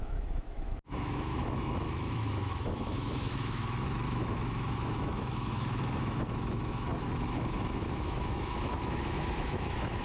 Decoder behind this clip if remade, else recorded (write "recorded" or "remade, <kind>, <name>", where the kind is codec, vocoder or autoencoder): remade, autoencoder, DAC-VAE